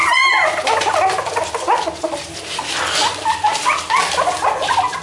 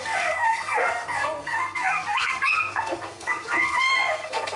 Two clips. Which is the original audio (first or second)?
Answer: first